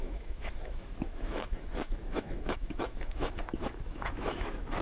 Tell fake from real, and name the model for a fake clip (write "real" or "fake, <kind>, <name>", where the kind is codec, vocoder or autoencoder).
fake, autoencoder, DAC-VAE